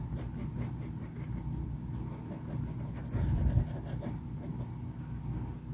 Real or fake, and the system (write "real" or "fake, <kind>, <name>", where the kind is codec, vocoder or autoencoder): real